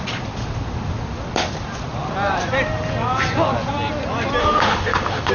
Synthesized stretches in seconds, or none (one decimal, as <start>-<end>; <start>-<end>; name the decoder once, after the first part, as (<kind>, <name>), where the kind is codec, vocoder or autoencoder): 4.4-5.3 (autoencoder, DAC-VAE)